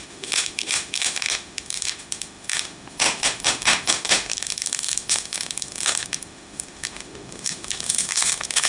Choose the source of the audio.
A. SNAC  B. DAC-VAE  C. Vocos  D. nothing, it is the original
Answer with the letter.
B